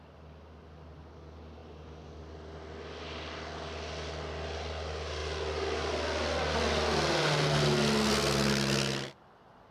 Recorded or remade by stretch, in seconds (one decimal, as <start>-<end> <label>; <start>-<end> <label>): 0.0-9.7 recorded